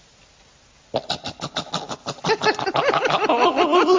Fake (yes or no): no